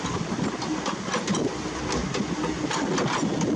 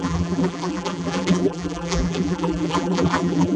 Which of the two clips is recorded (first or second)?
first